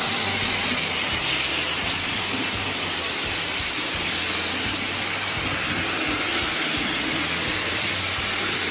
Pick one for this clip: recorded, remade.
recorded